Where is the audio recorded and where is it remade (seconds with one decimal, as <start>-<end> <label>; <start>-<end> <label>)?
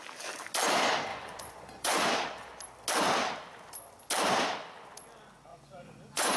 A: 0.0-1.1 recorded; 1.1-2.1 remade; 2.1-5.5 recorded; 5.5-6.4 remade